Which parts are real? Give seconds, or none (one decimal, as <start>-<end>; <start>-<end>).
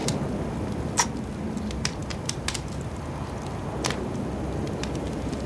0.0-5.5